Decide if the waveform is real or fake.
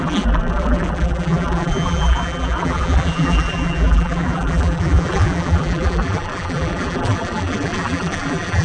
fake